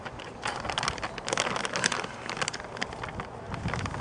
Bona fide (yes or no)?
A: yes